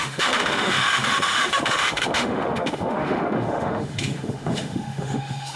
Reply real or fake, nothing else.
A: fake